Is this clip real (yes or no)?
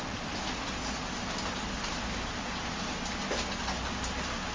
yes